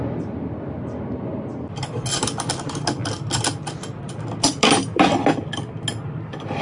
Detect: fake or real real